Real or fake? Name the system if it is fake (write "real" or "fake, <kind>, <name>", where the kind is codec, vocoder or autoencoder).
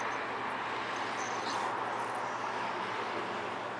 real